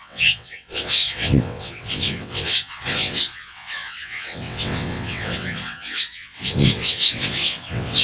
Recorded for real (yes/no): no